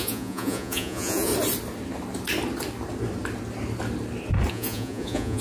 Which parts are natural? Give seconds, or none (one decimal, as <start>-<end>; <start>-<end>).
1.3-4.5